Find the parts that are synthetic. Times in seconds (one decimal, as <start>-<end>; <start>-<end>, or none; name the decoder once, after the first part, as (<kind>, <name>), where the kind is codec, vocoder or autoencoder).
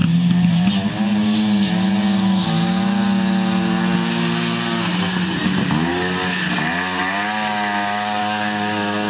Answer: none